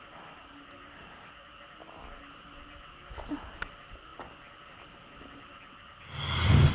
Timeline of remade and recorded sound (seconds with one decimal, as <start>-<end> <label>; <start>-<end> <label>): 0.0-6.7 recorded